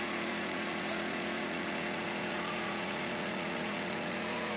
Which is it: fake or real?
fake